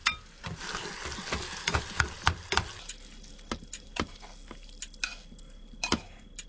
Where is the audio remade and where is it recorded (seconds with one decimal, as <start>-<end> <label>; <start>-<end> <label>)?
0.0-6.5 recorded